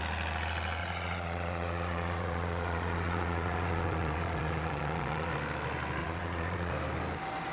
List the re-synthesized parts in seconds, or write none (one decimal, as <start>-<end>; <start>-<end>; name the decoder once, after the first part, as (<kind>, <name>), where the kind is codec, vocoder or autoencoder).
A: 0.8-5.3 (vocoder, Vocos); 6.0-6.7